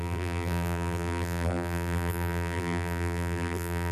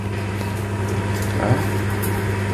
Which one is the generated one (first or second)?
first